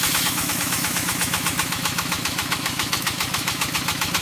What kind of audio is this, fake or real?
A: fake